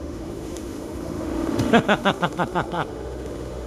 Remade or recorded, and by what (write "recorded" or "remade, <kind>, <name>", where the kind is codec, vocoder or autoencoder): remade, autoencoder, DAC-VAE